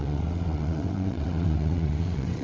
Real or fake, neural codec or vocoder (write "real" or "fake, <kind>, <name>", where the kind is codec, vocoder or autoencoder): fake, vocoder, WaveNeXt